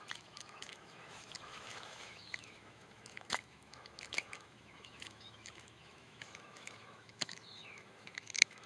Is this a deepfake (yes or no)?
yes